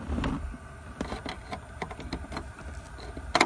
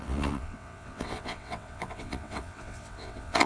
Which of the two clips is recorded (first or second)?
first